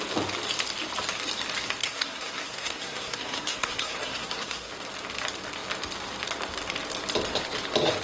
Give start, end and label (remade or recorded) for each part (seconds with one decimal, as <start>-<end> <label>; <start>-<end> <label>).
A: 0.0-1.8 recorded; 1.8-4.7 remade; 4.7-8.0 recorded

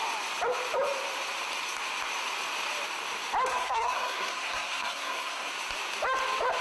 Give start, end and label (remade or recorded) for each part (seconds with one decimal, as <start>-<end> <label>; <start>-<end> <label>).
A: 0.0-3.5 recorded; 3.5-5.5 remade; 5.5-6.6 recorded

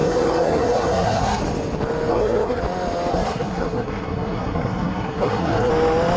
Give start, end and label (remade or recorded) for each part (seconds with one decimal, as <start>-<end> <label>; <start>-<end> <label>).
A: 0.0-1.4 remade; 1.4-2.1 recorded; 2.1-2.6 remade; 2.6-3.1 recorded; 3.1-5.7 remade; 5.7-6.2 recorded

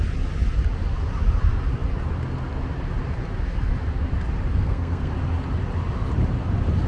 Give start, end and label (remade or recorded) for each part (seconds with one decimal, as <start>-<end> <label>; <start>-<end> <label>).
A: 0.0-4.5 recorded; 4.5-5.1 remade; 5.1-6.9 recorded

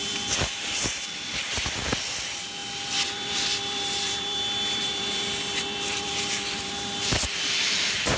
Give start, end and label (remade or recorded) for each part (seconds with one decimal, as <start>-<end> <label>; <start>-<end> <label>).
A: 0.0-8.2 remade

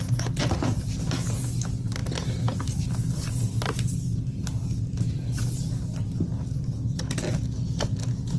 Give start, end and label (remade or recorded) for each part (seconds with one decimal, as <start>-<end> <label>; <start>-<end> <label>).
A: 0.0-8.4 recorded

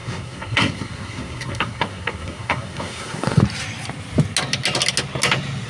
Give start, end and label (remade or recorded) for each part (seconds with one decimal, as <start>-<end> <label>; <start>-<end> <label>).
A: 0.0-3.4 remade; 3.4-5.7 recorded